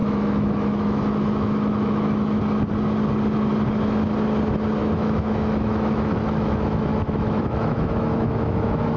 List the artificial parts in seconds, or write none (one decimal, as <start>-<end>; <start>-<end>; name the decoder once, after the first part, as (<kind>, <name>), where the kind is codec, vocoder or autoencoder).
0.0-2.4 (autoencoder, DAC-VAE); 4.8-9.0